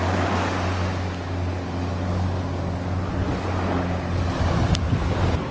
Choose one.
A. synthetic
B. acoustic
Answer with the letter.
B